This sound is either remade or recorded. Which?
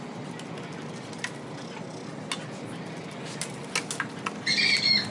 recorded